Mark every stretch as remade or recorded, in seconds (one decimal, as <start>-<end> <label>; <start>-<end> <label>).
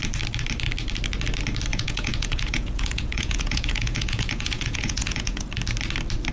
0.0-1.7 recorded; 1.7-5.5 remade; 5.5-6.3 recorded